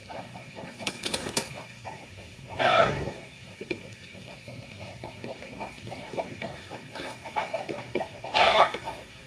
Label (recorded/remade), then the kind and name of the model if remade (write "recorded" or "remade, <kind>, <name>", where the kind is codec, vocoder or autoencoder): remade, codec, SNAC